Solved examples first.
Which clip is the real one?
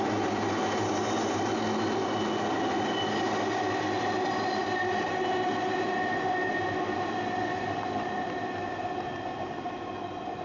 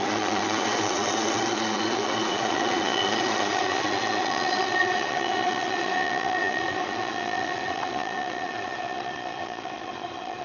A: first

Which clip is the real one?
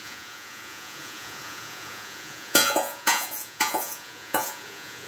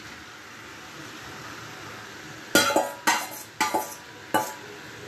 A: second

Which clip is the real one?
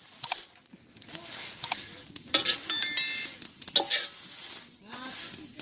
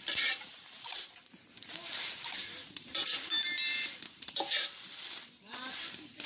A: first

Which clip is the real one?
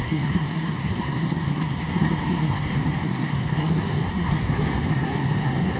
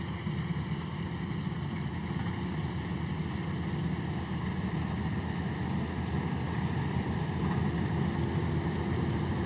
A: second